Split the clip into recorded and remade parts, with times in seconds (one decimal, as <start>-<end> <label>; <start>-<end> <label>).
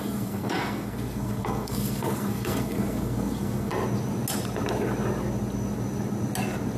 0.0-3.7 remade; 3.7-6.8 recorded